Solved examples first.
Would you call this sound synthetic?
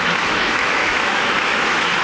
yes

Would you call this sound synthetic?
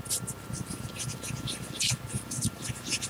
no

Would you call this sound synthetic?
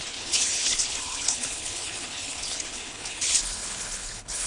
yes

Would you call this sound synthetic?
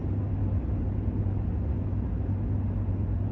no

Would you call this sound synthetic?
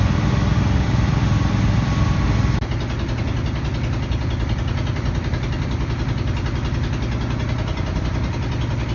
no